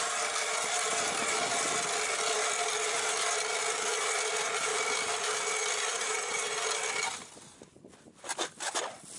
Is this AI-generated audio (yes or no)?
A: no